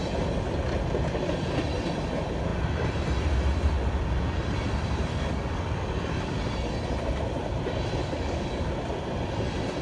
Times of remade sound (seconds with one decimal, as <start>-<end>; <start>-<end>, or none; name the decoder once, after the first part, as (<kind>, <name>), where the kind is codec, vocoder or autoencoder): 5.1-6.4 (codec, DAC); 8.0-8.7